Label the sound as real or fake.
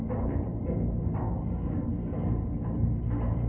fake